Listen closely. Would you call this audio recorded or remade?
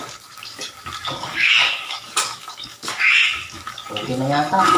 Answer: remade